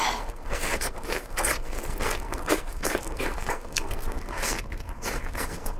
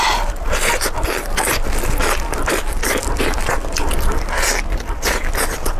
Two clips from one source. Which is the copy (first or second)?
first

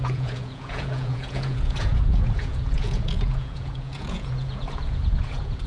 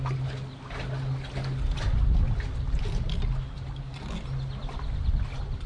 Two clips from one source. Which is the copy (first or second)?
first